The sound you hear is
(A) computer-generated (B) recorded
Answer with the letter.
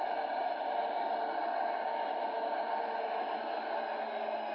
B